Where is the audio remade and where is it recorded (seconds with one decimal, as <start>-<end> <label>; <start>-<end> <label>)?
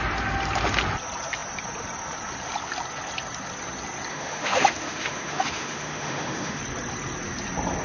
0.0-4.1 recorded; 4.1-6.6 remade; 6.6-7.8 recorded